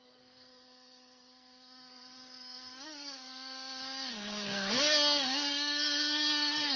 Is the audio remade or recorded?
remade